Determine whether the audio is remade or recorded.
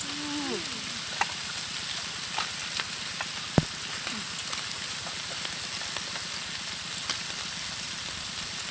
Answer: recorded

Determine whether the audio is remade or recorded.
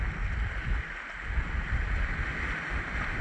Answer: recorded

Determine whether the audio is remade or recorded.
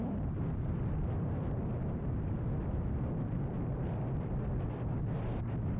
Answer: remade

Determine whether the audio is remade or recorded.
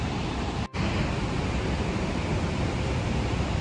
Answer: recorded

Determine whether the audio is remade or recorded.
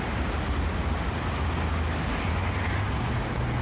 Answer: recorded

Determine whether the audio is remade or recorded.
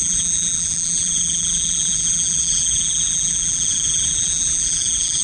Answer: remade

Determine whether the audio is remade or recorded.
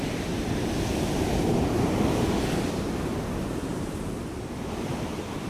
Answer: remade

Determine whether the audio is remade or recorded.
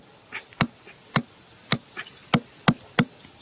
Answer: recorded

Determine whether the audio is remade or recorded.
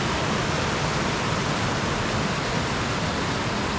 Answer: recorded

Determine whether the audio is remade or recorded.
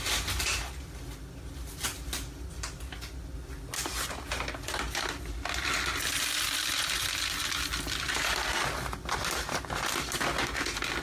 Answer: recorded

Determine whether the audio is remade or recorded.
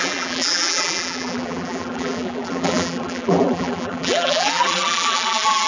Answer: remade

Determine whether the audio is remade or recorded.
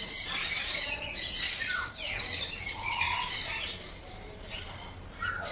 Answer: remade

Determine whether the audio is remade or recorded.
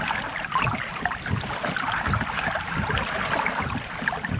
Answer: recorded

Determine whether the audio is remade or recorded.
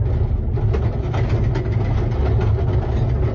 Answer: recorded